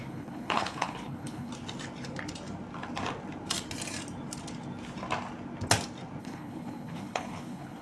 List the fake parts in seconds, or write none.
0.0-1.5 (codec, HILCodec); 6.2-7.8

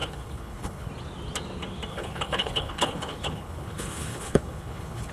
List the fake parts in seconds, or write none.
0.0-0.9 (codec, HILCodec); 1.9-5.1